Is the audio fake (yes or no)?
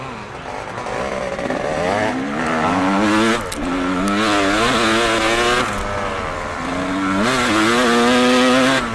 no